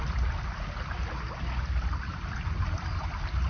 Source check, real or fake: real